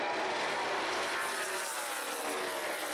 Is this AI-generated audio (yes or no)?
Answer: no